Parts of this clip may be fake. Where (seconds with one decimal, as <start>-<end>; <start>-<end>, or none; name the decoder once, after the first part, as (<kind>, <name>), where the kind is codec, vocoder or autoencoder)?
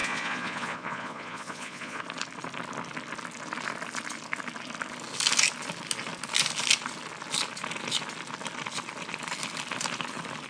0.0-2.0 (vocoder, Vocos)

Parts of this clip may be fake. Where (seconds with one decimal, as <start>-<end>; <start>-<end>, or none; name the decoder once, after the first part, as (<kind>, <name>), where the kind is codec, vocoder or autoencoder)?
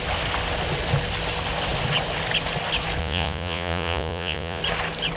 3.0-4.6 (vocoder, Vocos)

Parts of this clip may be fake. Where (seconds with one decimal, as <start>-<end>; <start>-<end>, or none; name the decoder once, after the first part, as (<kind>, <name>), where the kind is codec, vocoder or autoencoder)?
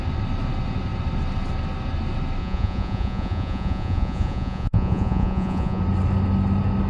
2.4-5.8 (vocoder, Vocos)